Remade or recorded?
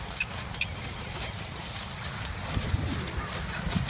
recorded